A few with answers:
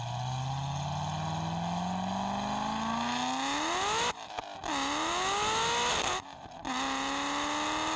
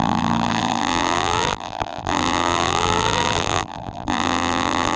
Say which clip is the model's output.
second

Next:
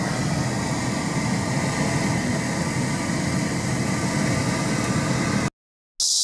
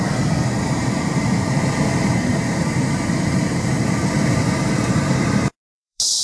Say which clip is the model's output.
second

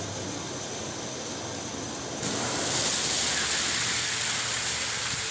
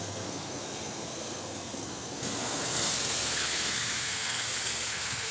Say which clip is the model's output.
second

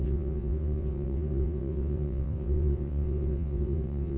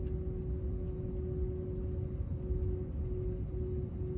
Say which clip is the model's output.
first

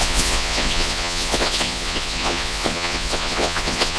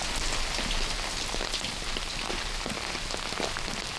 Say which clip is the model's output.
first